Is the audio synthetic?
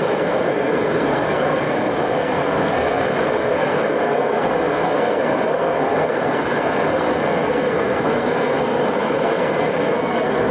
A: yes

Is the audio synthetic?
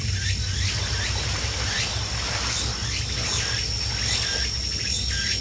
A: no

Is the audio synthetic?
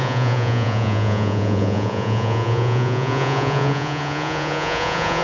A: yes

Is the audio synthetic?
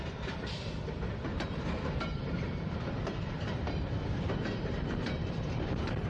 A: yes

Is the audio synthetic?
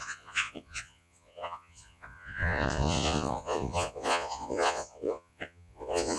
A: yes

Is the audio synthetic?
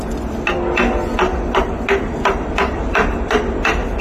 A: no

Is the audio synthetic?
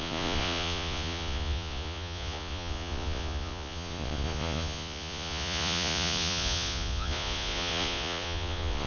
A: yes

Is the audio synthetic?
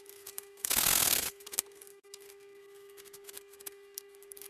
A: yes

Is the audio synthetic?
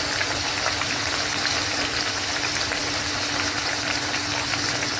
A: no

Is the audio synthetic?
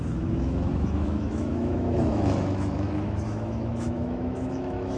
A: yes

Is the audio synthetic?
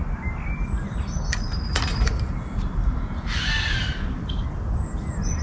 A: no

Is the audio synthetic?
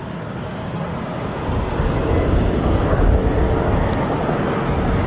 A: no